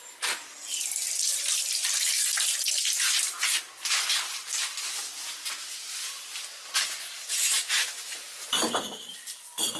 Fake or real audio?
real